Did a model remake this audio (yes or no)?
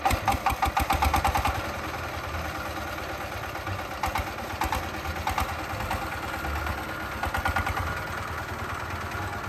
no